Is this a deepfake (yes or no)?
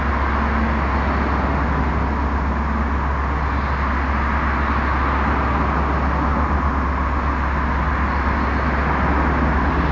no